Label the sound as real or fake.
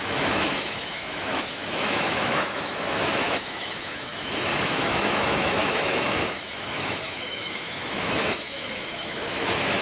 fake